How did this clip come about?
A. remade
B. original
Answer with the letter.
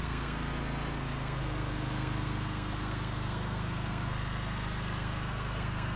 A